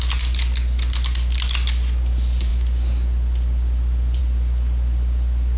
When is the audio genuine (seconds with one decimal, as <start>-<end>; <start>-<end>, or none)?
0.0-5.6